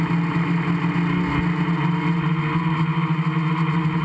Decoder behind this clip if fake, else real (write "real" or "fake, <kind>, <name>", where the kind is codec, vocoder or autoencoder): real